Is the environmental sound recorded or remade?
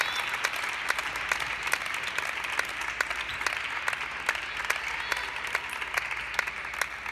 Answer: recorded